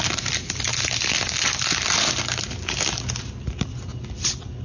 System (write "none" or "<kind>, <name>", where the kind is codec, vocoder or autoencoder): none